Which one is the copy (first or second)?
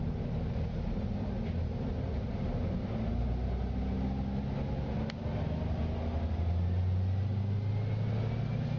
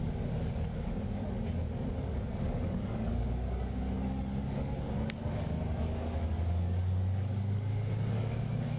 second